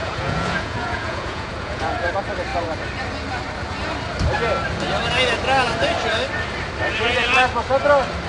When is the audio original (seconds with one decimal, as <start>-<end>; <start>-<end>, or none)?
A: 2.1-8.3